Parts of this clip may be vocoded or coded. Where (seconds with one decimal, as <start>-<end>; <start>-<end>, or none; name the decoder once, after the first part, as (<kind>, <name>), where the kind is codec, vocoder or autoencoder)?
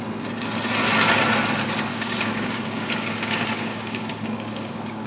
1.9-5.1 (codec, DAC)